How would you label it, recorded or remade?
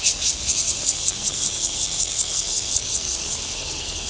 remade